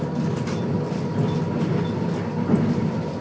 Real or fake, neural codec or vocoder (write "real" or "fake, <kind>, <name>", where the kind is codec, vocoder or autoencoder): real